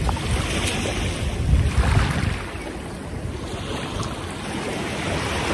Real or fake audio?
real